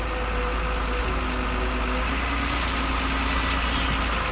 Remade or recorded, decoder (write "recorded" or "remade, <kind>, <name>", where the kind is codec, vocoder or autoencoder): recorded